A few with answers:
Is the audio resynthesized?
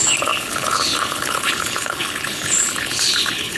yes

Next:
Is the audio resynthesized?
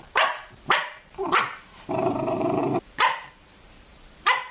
yes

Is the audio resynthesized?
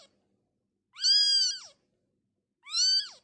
no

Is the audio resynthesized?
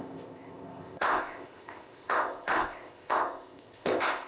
yes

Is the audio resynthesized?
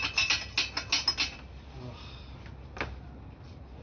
no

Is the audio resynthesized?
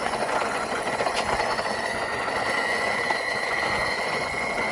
yes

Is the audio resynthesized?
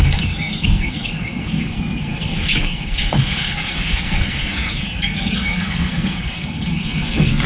yes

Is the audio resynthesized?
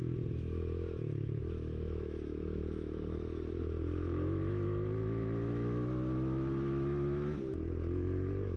yes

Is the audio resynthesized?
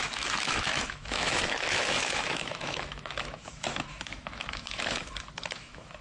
yes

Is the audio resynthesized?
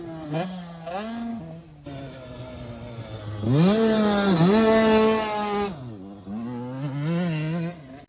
no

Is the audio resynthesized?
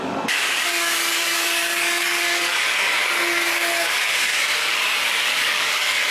yes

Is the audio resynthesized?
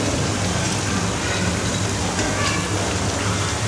no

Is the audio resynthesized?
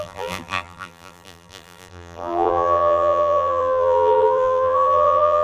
yes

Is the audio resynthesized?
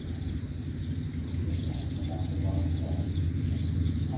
no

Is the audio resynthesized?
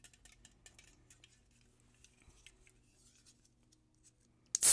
no